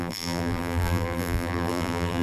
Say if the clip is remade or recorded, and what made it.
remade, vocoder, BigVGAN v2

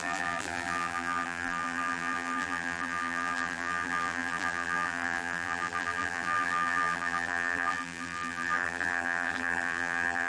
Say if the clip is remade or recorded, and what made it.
remade, vocoder, BigVGAN v2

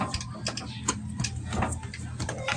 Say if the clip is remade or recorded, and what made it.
recorded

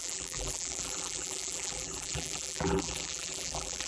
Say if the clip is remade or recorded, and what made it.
remade, vocoder, BigVGAN v2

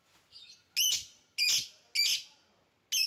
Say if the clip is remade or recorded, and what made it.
recorded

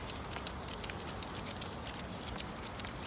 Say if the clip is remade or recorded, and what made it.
recorded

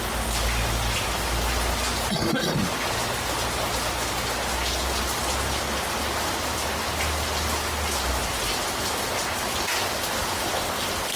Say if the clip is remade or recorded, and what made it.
recorded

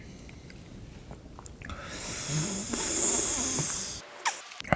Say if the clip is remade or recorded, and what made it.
recorded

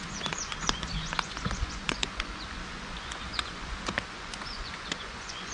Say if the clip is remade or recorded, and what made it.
remade, vocoder, Vocos